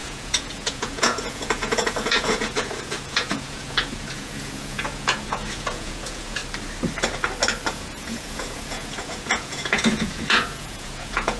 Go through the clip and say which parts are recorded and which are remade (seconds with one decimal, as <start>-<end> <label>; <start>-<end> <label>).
0.0-6.4 remade; 6.4-7.7 recorded; 7.7-11.4 remade

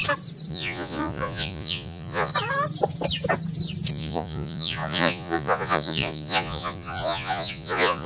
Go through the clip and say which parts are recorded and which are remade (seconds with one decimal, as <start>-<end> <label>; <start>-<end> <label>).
0.0-0.5 recorded; 0.5-2.3 remade; 2.3-3.9 recorded; 3.9-8.1 remade